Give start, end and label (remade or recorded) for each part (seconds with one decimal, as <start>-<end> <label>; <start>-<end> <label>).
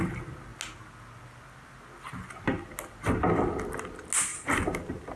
0.0-4.3 recorded; 4.3-5.2 remade